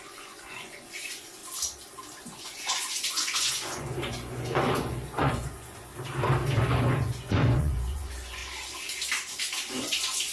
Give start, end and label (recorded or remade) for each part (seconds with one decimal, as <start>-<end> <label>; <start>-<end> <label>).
0.0-1.4 remade; 1.4-2.2 recorded; 2.2-5.9 remade; 5.9-6.7 recorded; 6.7-8.4 remade; 8.4-9.7 recorded; 9.7-10.3 remade